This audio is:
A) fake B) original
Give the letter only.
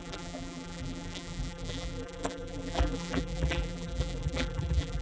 A